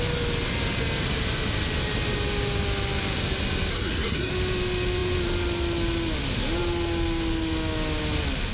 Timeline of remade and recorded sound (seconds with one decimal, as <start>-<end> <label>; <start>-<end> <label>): 0.0-3.7 recorded; 3.7-4.3 remade; 4.3-8.5 recorded